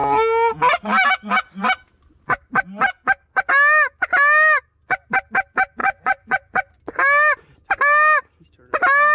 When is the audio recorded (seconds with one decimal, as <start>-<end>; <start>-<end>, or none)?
0.0-5.8; 6.8-9.1